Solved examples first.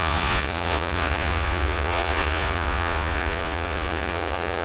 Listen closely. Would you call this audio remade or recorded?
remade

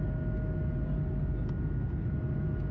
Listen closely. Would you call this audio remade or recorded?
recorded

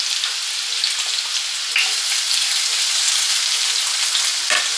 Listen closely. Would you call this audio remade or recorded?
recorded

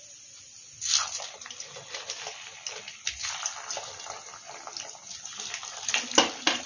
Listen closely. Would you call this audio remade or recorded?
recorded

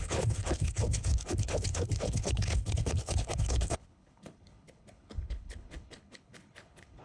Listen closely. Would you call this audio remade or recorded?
remade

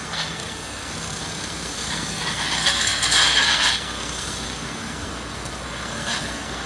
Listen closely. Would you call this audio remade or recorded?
remade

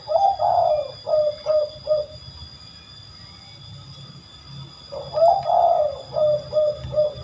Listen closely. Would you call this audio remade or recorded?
recorded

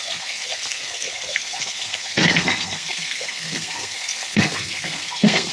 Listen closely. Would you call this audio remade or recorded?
remade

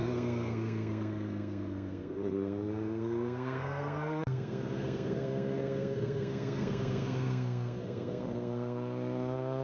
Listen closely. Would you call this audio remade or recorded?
remade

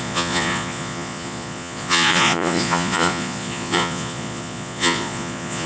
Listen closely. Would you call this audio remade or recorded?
remade